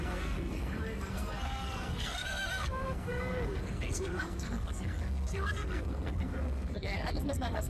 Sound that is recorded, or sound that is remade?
remade